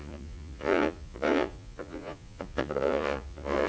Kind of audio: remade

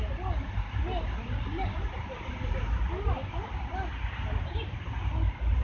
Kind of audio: recorded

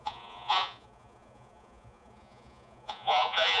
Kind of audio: remade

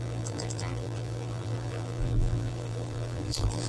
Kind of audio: remade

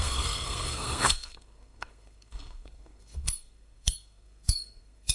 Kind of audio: remade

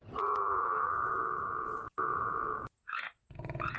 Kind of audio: remade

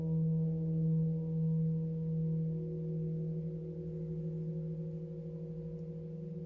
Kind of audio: recorded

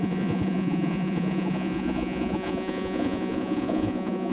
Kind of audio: remade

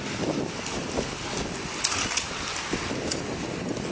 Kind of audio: recorded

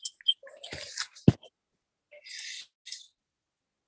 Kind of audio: recorded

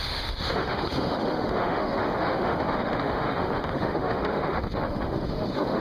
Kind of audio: remade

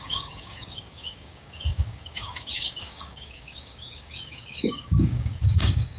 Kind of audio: remade